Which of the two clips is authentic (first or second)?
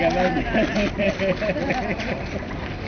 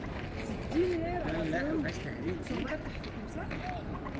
second